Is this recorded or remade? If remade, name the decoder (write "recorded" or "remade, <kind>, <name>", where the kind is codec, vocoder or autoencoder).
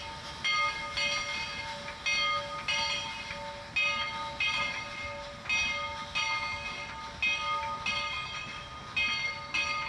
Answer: recorded